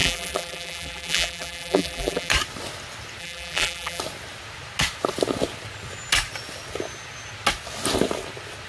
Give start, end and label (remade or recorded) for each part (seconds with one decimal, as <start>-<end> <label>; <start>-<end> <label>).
0.0-2.3 remade; 2.3-3.2 recorded; 3.2-4.0 remade; 4.0-8.7 recorded